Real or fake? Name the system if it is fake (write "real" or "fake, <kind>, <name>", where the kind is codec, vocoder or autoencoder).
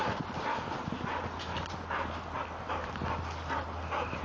real